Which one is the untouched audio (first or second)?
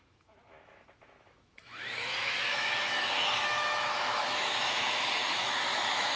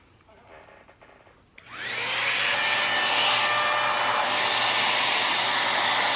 second